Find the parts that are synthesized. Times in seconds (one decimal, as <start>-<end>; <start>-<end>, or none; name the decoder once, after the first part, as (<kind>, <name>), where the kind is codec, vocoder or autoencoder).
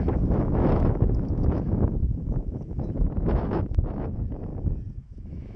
0.0-4.5 (autoencoder, DAC-VAE); 5.0-5.6